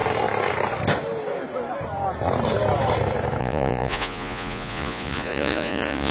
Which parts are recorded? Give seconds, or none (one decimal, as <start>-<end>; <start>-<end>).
0.0-3.4